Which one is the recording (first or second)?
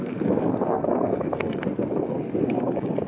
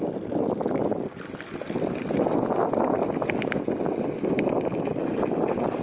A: second